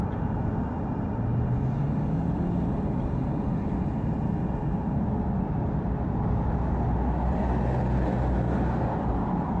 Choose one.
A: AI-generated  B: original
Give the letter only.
B